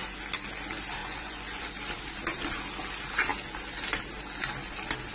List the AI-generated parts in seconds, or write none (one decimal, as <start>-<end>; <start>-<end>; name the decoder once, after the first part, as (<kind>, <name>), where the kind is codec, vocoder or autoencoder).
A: 1.0-1.7 (vocoder, Vocos)